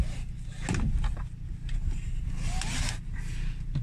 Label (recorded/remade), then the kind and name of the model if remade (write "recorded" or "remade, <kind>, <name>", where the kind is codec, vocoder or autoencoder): recorded